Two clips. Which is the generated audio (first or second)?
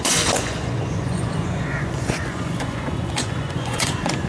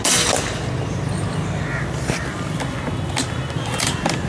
first